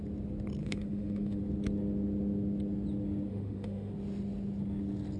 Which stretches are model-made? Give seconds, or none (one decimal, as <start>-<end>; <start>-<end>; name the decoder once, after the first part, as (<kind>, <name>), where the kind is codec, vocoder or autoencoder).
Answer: 0.6-1.4 (autoencoder, DAC-VAE); 3.3-3.9